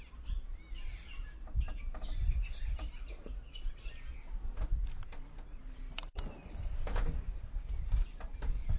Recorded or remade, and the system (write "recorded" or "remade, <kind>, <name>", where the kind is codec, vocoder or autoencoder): recorded